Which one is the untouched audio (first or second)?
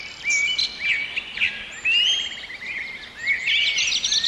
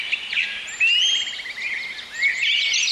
first